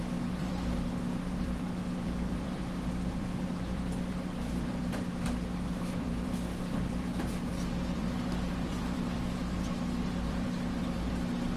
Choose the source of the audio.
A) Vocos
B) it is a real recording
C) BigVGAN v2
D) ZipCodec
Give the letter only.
C